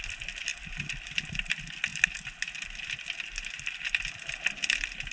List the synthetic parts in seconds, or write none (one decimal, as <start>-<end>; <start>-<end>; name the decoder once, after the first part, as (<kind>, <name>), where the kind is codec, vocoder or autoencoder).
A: none